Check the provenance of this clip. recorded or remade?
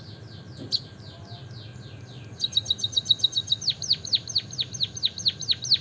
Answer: recorded